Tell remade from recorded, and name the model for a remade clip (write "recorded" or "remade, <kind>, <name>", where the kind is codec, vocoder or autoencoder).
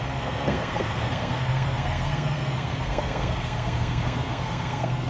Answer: remade, codec, SNAC